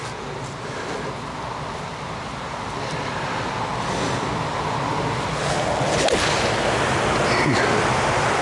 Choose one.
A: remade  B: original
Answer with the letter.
B